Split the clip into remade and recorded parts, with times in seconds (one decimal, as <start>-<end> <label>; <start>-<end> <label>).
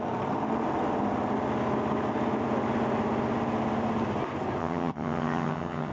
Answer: 0.0-4.6 recorded; 4.6-5.9 remade